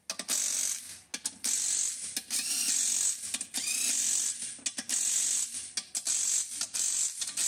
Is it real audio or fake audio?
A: real